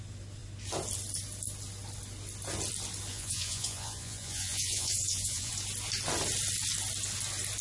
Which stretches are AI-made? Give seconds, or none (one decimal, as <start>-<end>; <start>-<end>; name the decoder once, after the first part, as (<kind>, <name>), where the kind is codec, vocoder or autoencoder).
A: 3.1-5.5 (vocoder, Vocos)